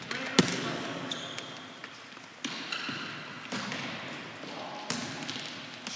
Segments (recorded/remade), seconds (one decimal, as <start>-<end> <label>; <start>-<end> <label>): 0.0-0.5 recorded; 0.5-1.2 remade; 1.2-6.0 recorded